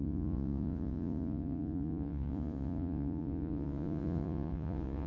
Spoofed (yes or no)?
yes